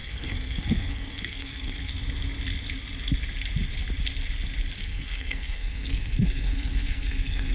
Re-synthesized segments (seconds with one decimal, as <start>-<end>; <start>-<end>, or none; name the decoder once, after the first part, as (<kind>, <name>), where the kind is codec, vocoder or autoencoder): 0.0-1.9 (codec, SNAC); 4.8-7.5